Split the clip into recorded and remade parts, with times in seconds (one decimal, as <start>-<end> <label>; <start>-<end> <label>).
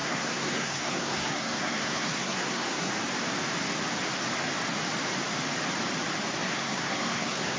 0.0-2.9 remade; 2.9-6.4 recorded; 6.4-7.6 remade